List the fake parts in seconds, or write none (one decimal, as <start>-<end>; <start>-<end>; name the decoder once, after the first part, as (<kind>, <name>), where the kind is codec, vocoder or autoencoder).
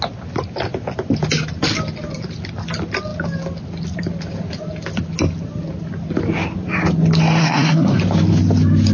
7.4-8.0 (codec, SNAC)